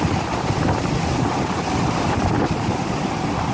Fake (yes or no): no